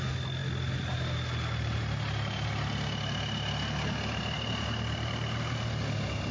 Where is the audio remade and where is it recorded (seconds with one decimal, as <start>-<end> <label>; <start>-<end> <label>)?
0.0-6.3 recorded